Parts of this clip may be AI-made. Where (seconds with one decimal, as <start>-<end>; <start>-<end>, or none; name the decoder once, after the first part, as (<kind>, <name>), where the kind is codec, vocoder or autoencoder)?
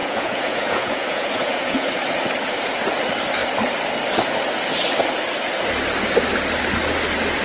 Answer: 0.0-1.9 (vocoder, Vocos)